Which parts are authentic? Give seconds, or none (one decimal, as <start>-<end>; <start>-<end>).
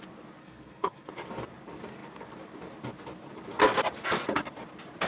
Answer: 0.0-0.4; 1.1-5.1